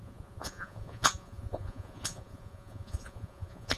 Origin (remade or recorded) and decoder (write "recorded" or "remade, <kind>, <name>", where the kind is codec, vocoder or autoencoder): remade, vocoder, Vocos